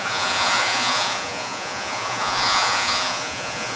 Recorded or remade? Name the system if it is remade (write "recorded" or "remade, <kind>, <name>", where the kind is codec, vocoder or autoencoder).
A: remade, vocoder, Vocos